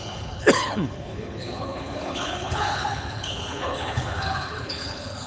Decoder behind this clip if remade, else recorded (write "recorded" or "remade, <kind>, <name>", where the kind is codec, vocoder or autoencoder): remade, codec, HILCodec